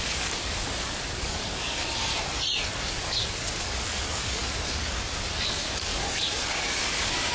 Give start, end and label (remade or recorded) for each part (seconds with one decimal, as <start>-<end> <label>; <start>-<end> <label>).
0.0-2.1 remade; 2.1-2.8 recorded; 2.8-7.3 remade

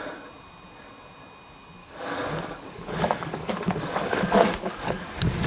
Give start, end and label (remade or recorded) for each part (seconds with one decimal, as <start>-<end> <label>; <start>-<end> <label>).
0.0-1.8 recorded; 1.8-5.1 remade; 5.1-5.5 recorded

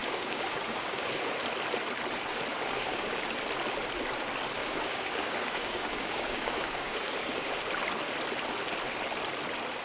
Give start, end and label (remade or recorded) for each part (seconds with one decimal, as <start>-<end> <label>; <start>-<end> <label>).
0.0-1.2 remade; 1.2-2.5 recorded; 2.5-3.3 remade; 3.3-4.6 recorded; 4.6-7.6 remade; 7.6-9.8 recorded

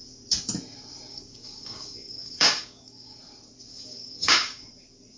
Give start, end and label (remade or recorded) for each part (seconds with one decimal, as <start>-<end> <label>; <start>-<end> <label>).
0.0-1.1 recorded; 1.1-3.2 remade; 3.2-3.7 recorded; 3.7-4.7 remade; 4.7-5.2 recorded

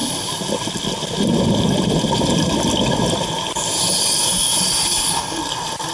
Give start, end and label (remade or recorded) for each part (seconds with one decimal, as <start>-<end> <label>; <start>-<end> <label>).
0.0-4.9 recorded; 4.9-5.4 remade; 5.4-5.9 recorded